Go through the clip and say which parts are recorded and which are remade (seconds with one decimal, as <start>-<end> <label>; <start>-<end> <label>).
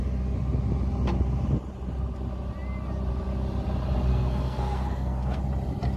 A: 0.0-4.1 recorded; 4.1-5.4 remade; 5.4-6.0 recorded